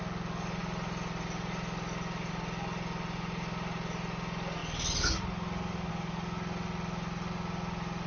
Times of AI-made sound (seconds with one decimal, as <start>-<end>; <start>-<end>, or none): none